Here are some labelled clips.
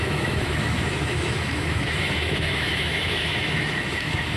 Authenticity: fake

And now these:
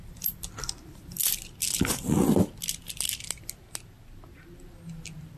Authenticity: real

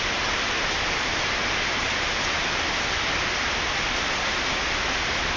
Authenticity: real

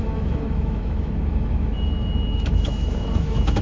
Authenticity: fake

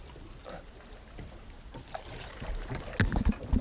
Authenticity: real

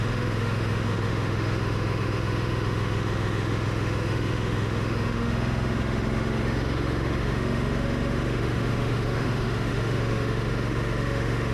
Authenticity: fake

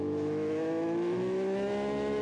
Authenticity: fake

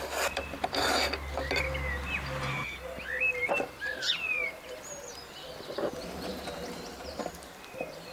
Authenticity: real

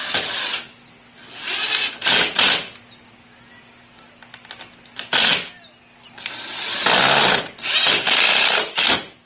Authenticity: real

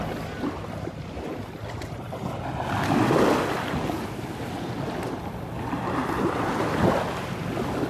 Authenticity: real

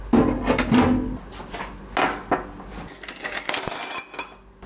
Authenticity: real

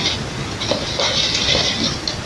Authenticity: real